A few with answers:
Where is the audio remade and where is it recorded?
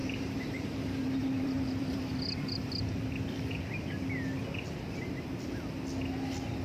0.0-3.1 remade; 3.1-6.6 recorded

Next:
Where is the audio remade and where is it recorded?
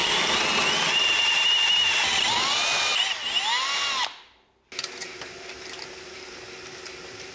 0.0-0.7 recorded; 0.7-2.9 remade; 2.9-4.8 recorded; 4.8-7.3 remade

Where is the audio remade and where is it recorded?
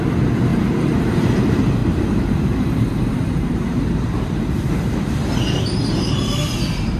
0.0-0.5 recorded; 0.5-1.4 remade; 1.4-1.8 recorded; 1.8-6.0 remade; 6.0-7.0 recorded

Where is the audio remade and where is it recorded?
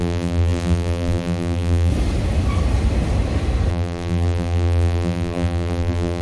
0.0-1.9 remade; 1.9-3.7 recorded; 3.7-6.2 remade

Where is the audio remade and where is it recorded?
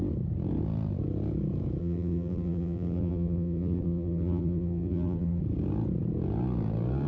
0.0-1.8 recorded; 1.8-5.4 remade; 5.4-7.1 recorded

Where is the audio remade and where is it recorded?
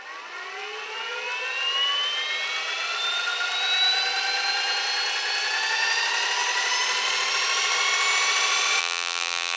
0.0-8.8 recorded; 8.8-9.6 remade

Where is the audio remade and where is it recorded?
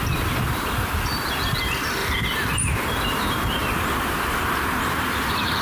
0.0-2.0 recorded; 2.0-5.6 remade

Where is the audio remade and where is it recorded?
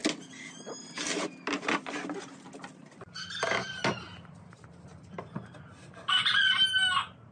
0.0-7.3 recorded